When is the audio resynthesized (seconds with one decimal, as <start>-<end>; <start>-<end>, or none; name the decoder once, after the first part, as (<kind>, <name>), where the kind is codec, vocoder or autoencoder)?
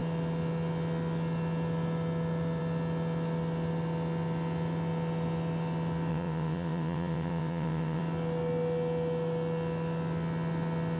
6.1-8.0 (vocoder, WaveNeXt)